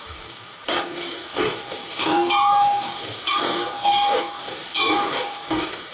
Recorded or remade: remade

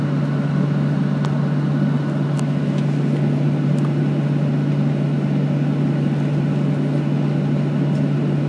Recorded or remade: recorded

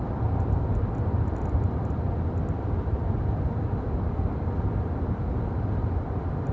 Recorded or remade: remade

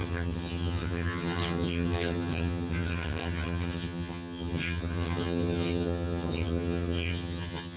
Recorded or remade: remade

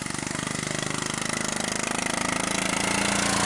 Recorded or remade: recorded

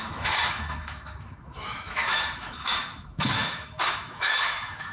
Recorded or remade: remade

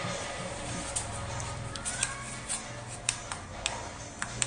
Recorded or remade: recorded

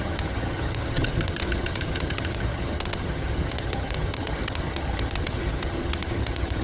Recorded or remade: remade